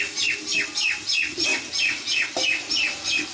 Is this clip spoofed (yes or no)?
no